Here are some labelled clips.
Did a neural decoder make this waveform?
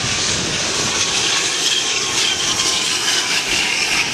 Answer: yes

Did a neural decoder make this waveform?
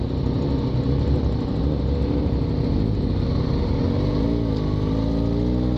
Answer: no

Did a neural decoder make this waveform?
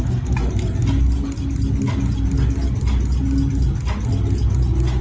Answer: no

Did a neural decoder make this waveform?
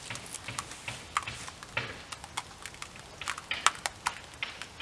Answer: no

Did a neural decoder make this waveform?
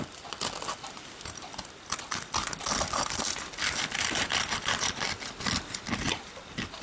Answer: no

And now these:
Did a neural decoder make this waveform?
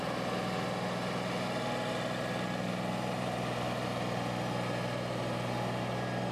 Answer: no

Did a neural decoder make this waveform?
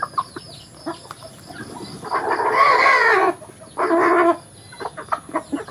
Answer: no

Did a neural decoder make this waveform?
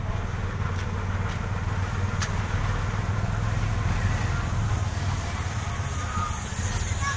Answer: no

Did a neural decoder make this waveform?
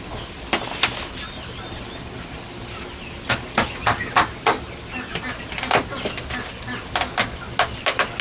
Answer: no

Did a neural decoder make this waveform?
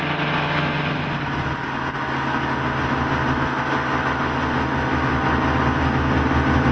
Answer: no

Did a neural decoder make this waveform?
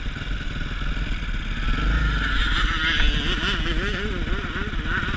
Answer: no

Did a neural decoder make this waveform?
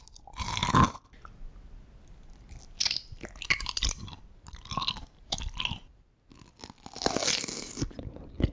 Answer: no